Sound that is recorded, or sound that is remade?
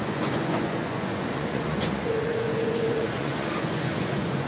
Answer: remade